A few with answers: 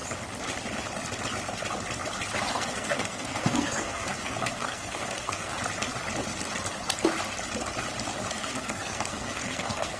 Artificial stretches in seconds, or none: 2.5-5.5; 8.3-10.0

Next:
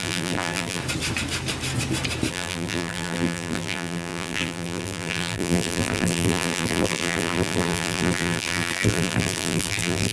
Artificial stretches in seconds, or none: 0.0-0.8; 2.3-10.1